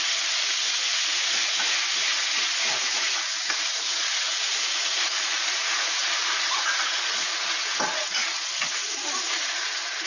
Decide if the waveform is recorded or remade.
remade